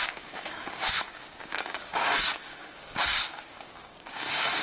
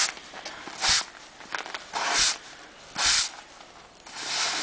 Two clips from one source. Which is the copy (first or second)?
first